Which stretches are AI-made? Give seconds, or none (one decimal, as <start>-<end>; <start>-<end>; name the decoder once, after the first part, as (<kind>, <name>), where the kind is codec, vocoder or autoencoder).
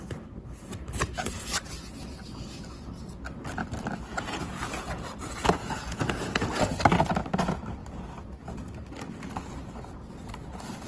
4.1-6.5 (vocoder, Vocos)